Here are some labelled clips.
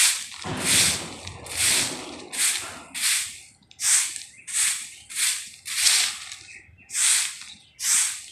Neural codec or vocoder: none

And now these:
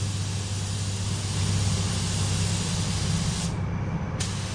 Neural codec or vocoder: none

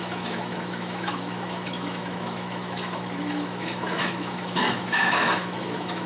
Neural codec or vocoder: autoencoder, DAC-VAE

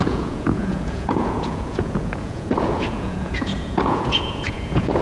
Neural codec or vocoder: vocoder, Vocos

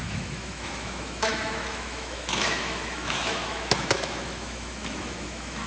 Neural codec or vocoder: autoencoder, DAC-VAE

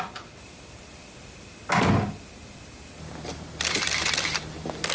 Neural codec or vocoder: none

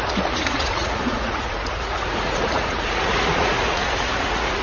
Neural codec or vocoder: vocoder, Vocos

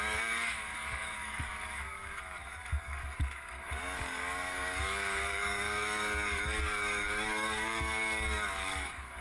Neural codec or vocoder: codec, DAC